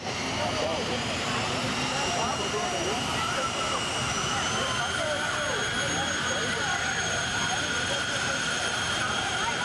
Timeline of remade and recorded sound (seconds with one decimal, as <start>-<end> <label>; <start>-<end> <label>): 0.0-3.9 remade; 3.9-7.0 recorded; 7.0-9.6 remade